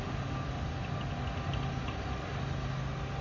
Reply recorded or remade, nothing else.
recorded